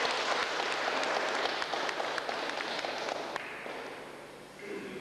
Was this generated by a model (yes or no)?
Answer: no